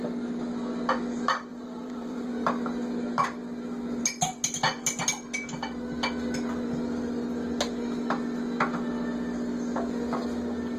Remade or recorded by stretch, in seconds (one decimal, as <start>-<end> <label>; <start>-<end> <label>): 0.0-1.5 recorded; 1.5-2.3 remade; 2.3-10.8 recorded